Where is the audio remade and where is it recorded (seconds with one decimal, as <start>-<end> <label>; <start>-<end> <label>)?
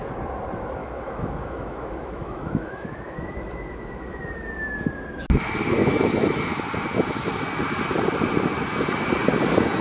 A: 0.0-0.8 recorded; 0.8-4.5 remade; 4.5-5.8 recorded; 5.8-6.4 remade; 6.4-9.8 recorded